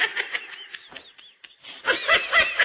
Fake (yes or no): no